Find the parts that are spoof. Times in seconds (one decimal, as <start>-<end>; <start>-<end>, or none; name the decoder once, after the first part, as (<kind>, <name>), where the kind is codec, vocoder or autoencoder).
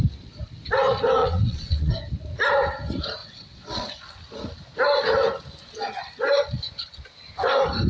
1.2-1.9 (vocoder, WaveNeXt); 3.2-4.0